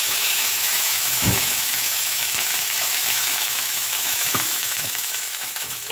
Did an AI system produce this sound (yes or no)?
yes